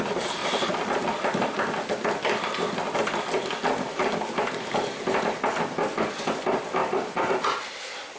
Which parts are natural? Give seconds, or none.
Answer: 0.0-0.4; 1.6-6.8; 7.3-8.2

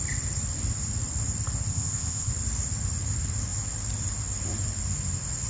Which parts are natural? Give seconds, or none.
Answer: 0.0-1.7; 2.3-5.5